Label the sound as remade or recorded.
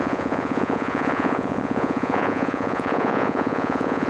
remade